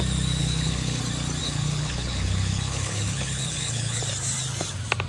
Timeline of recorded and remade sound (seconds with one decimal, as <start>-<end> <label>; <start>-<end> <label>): 0.0-0.4 recorded; 0.4-1.0 remade; 1.0-1.4 recorded; 1.4-4.0 remade; 4.0-5.1 recorded